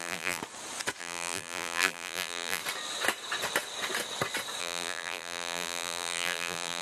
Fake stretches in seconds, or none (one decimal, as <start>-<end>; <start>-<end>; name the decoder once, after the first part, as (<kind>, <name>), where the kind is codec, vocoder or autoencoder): 0.0-0.4 (vocoder, BigVGAN v2); 1.0-2.6; 4.6-6.8